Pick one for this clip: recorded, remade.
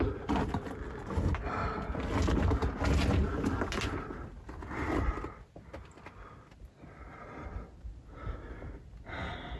recorded